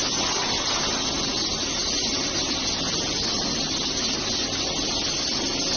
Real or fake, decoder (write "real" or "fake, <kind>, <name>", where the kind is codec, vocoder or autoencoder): real